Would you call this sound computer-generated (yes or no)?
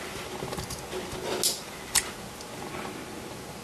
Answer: no